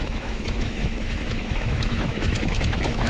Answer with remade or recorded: remade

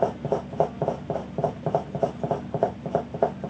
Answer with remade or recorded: recorded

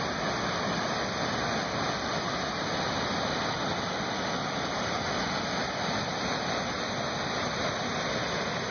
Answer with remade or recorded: recorded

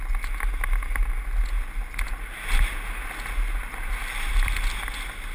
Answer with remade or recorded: recorded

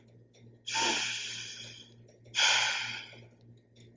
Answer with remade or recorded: recorded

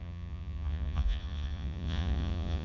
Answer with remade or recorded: remade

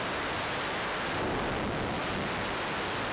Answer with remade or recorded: recorded